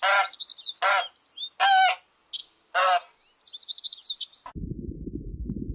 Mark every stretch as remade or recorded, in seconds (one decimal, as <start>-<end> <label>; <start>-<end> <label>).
0.0-5.7 recorded